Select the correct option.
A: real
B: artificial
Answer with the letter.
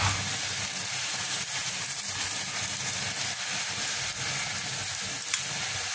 A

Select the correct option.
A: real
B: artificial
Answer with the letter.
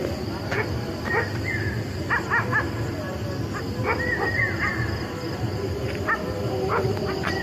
A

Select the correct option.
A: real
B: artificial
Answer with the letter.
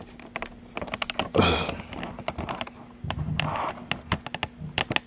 A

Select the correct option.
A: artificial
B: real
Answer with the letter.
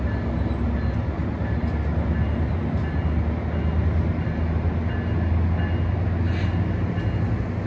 B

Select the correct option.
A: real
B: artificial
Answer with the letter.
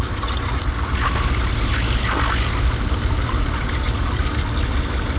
A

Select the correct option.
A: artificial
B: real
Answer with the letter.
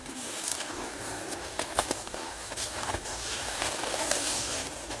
A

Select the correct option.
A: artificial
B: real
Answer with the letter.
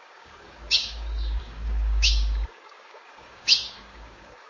A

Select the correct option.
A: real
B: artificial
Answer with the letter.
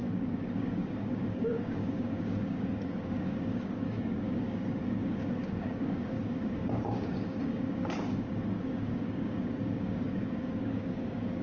B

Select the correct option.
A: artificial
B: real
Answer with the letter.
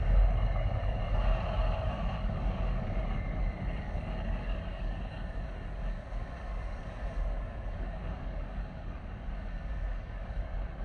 A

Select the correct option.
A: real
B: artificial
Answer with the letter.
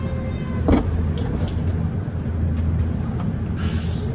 A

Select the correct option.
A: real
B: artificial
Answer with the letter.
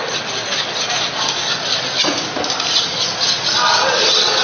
A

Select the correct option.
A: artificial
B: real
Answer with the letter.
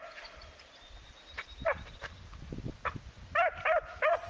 B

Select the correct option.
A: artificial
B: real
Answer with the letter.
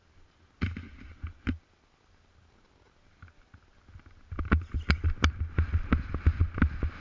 B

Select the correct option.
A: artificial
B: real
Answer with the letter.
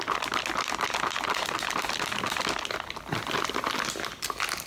B